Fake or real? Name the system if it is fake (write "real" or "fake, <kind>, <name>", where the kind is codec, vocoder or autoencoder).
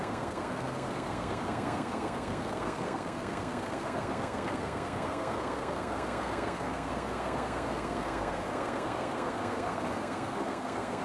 fake, codec, SNAC